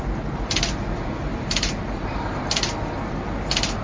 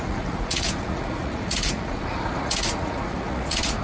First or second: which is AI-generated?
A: second